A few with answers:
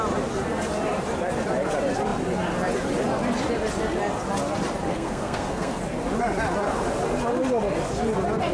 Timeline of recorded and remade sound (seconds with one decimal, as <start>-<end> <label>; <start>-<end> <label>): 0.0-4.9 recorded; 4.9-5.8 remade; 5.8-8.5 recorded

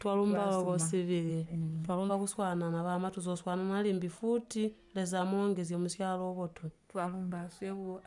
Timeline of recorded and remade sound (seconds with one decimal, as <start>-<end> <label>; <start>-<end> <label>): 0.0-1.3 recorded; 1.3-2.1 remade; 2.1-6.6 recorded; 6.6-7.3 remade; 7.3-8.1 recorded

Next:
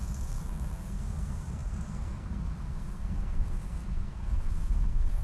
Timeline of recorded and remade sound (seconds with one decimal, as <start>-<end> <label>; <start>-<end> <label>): 0.0-5.2 remade

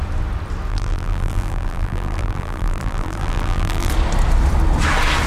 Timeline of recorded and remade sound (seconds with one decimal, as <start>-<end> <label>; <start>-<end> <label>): 0.0-0.7 recorded; 0.7-3.9 remade; 3.9-5.3 recorded

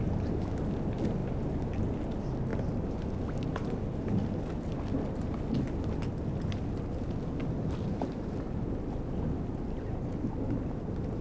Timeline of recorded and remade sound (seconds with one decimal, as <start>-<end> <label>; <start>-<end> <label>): 0.0-11.2 recorded

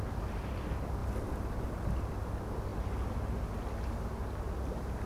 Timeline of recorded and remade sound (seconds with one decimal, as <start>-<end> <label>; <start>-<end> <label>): 0.0-5.1 recorded

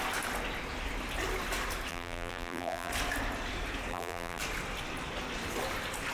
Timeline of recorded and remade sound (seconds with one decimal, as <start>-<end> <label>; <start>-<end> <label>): 0.0-1.9 recorded; 1.9-2.9 remade; 2.9-3.9 recorded; 3.9-4.4 remade; 4.4-6.1 recorded

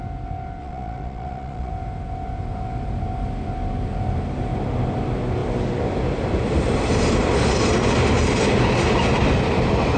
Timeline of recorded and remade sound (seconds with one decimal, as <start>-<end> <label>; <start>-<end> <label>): 0.0-0.6 recorded; 0.6-1.7 remade; 1.7-10.0 recorded